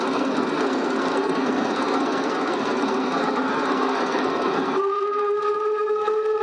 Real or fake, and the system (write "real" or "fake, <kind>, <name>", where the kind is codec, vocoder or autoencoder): fake, codec, SNAC